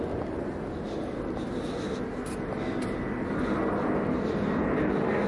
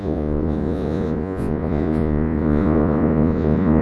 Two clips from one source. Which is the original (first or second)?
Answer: first